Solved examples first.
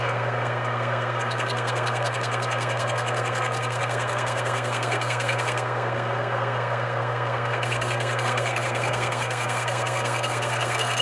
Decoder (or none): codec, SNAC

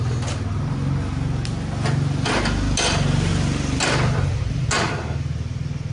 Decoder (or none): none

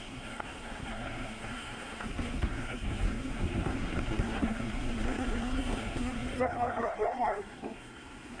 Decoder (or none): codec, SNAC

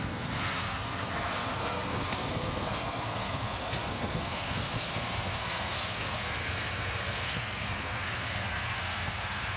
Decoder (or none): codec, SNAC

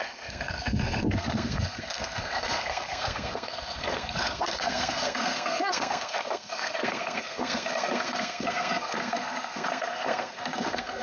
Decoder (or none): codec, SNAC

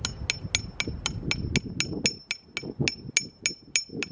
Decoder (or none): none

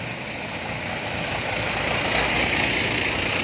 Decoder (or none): none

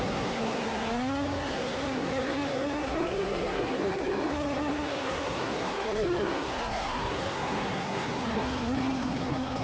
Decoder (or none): codec, SNAC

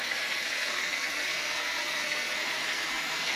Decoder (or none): codec, SNAC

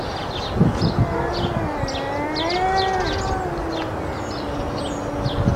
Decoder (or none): none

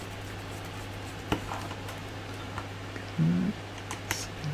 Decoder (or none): none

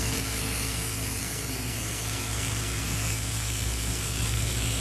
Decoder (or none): codec, SNAC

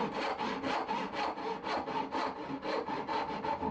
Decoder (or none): none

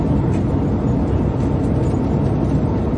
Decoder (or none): none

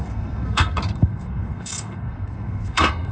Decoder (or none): codec, SNAC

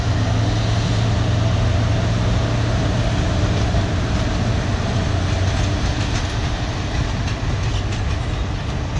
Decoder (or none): none